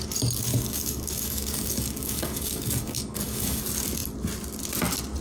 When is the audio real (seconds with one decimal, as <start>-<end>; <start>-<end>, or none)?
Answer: 0.0-0.5; 3.6-5.2